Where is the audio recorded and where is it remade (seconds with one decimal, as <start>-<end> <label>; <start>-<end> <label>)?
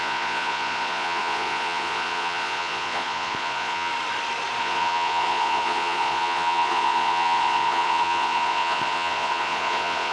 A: 0.0-3.9 remade; 3.9-4.6 recorded; 4.6-10.1 remade